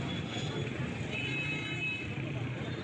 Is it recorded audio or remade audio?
recorded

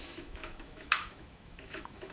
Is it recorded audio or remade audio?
remade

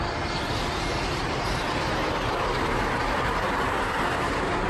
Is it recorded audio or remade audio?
remade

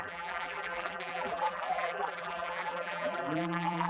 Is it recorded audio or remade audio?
remade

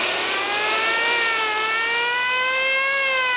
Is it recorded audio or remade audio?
recorded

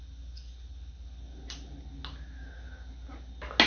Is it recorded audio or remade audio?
recorded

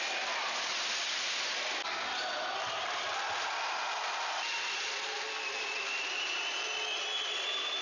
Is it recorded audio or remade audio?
recorded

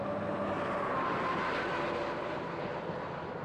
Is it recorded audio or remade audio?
recorded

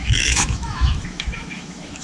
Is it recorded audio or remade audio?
remade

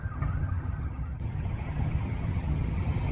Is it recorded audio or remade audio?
remade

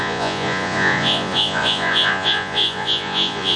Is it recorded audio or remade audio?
remade